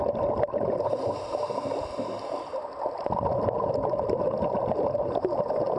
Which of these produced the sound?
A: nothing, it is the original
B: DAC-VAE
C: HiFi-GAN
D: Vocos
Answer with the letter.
A